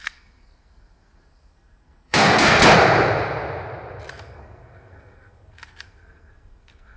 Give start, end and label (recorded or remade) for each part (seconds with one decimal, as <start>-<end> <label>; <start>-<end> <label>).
0.0-2.6 remade; 2.6-4.1 recorded; 4.1-7.0 remade